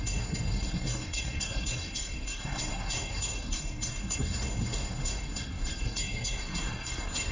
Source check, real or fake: fake